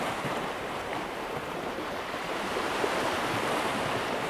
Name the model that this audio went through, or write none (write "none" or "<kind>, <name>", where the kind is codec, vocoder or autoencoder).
vocoder, BigVGAN v2